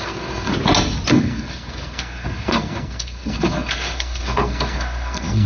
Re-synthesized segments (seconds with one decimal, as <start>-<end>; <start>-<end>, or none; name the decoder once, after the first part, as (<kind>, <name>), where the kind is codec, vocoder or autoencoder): 0.0-0.5 (codec, SNAC); 1.1-5.5